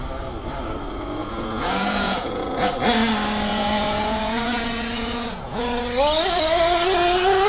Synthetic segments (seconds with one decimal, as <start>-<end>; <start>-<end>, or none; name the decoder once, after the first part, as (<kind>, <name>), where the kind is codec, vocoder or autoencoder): 1.2-2.7 (vocoder, Vocos); 3.5-5.8